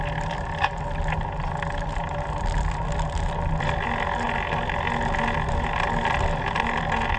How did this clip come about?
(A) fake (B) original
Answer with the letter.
B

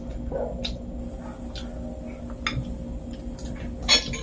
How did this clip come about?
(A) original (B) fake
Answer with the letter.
A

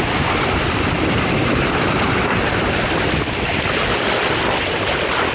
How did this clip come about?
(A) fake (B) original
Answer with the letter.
B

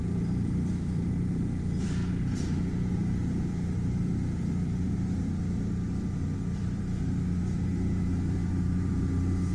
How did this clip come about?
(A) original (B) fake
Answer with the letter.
B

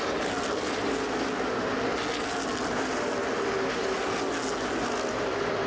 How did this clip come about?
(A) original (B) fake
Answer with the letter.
A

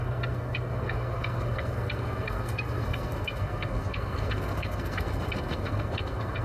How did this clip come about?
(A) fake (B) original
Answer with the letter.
A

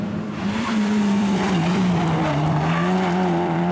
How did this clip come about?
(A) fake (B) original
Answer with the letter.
A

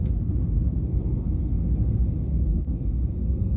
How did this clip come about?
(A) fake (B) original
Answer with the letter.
A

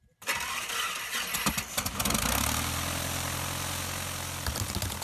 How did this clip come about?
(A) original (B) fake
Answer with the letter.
A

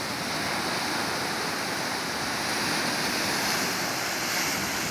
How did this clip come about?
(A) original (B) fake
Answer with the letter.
A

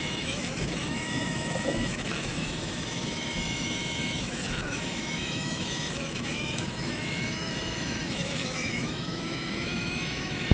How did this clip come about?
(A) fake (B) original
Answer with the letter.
A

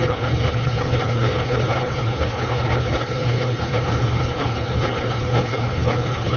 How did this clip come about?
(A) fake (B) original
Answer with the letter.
A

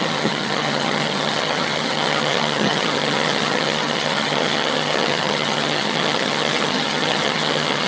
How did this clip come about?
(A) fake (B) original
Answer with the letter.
A